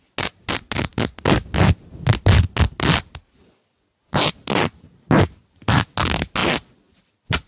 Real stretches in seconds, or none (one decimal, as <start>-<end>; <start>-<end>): 0.0-7.5